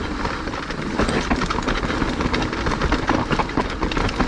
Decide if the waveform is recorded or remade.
recorded